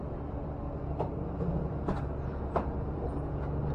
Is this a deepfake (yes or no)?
no